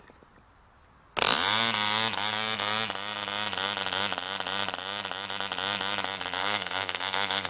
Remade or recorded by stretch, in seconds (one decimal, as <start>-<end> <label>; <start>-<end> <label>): 0.0-6.4 recorded; 6.4-7.5 remade